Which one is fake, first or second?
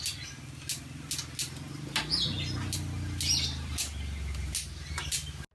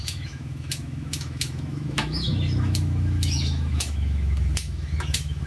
second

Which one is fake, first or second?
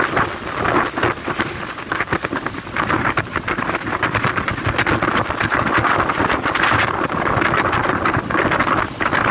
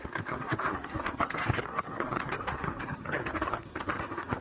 second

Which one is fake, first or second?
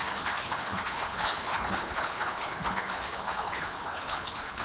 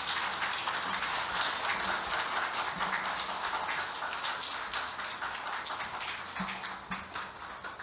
first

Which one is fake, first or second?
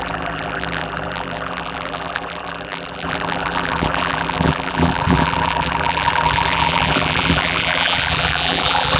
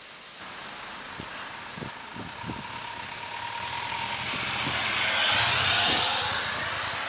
first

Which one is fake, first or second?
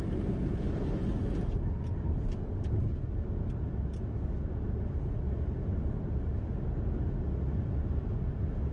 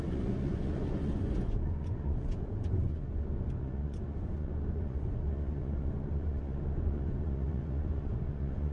second